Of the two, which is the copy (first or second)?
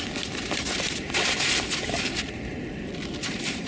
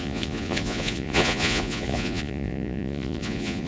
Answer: second